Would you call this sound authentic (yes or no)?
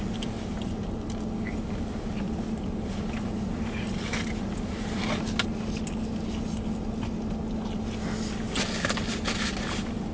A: yes